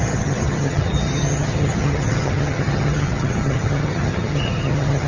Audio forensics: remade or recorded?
remade